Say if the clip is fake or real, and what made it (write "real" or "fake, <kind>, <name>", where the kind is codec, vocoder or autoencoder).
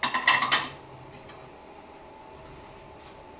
real